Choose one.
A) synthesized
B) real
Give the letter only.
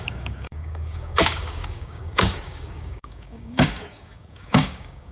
A